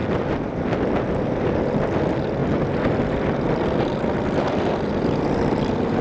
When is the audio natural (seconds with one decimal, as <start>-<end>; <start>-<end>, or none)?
0.0-6.0